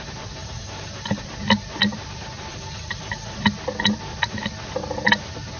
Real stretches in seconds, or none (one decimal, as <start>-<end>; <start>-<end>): 0.0-0.4; 1.2-2.5; 3.4-5.6